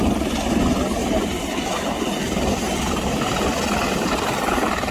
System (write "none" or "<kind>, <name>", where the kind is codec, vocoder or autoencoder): none